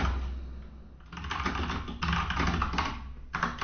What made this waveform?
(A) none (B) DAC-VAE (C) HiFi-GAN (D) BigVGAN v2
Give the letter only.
A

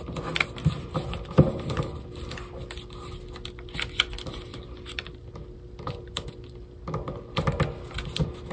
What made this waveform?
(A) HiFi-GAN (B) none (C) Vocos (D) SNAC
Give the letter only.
B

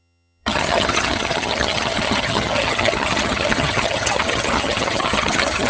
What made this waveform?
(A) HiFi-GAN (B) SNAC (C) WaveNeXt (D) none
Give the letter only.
A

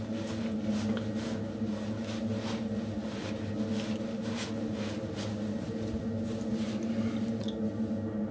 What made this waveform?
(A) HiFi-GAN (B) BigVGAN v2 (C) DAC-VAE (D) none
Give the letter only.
D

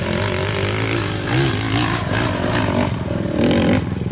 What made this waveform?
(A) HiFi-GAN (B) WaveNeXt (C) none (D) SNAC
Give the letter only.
C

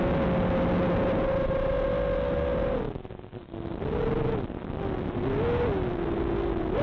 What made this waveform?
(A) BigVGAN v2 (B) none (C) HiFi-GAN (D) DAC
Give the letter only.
B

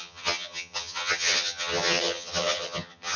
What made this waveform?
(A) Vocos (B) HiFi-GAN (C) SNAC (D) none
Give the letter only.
B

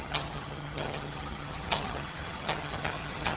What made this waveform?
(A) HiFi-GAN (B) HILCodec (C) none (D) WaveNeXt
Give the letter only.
A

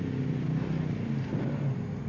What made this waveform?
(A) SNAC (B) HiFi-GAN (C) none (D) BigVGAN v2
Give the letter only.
C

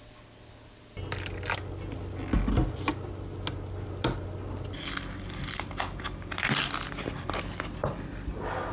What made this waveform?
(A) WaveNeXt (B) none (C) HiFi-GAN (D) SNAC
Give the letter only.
B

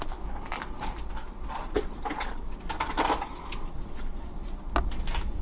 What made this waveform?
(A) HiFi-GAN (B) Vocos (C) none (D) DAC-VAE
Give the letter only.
C